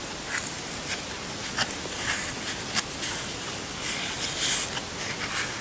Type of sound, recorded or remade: recorded